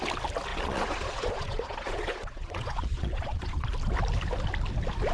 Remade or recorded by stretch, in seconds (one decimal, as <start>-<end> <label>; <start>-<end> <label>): 0.0-0.5 recorded; 0.5-3.6 remade; 3.6-5.1 recorded